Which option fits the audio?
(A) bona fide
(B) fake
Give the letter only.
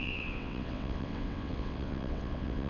B